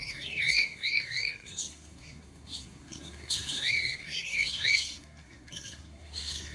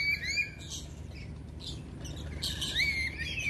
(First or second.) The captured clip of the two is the second